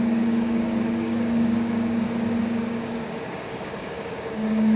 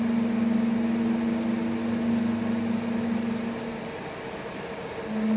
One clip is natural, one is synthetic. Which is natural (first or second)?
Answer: second